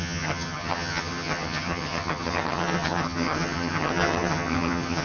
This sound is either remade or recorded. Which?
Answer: remade